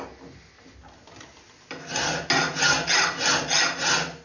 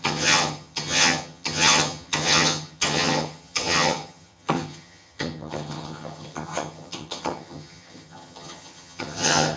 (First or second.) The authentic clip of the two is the first